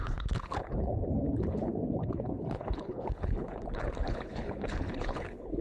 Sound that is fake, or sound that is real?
fake